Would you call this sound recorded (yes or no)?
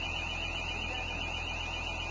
yes